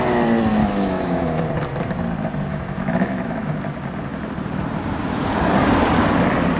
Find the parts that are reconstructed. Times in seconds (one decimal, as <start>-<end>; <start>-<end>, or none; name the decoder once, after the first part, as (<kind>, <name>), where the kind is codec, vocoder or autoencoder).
0.6-1.4 (autoencoder, DAC-VAE); 2.5-3.5